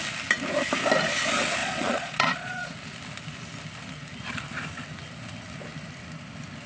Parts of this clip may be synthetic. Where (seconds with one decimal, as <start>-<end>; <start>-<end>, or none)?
1.6-2.7